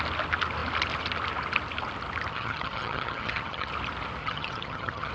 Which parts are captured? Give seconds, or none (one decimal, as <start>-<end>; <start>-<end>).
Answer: 0.0-2.3; 3.7-4.2